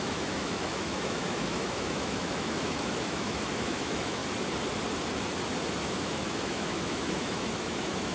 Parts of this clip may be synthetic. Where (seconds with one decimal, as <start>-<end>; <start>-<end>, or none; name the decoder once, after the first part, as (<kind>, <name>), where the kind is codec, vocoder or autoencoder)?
0.0-4.2 (autoencoder, DAC-VAE); 5.8-8.1

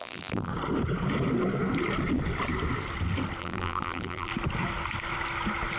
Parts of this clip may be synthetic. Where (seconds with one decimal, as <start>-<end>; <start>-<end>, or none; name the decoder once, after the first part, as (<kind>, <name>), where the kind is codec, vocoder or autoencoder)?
0.0-0.5 (vocoder, BigVGAN v2); 3.4-4.3

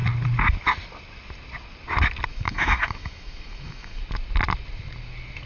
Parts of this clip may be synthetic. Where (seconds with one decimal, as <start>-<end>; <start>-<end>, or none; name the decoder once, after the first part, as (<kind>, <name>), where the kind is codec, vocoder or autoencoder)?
2.3-4.0 (autoencoder, DAC-VAE)

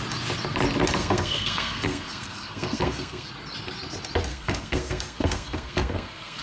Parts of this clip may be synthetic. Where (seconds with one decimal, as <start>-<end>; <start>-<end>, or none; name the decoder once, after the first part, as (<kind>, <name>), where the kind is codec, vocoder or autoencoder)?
1.0-3.3 (codec, SNAC); 4.3-6.4

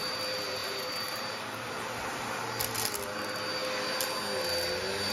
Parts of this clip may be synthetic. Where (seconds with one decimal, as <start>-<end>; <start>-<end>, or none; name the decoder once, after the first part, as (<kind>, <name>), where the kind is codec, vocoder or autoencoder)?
0.6-2.3 (vocoder, BigVGAN v2)

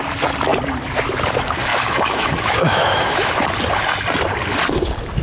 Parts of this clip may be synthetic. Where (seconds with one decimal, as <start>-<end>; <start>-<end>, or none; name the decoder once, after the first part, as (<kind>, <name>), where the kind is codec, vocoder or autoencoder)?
1.7-3.5 (autoencoder, DAC-VAE)

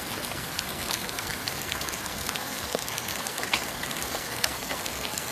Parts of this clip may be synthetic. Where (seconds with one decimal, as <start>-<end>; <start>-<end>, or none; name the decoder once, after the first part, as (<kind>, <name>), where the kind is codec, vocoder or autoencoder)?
0.0-5.3 (codec, SNAC)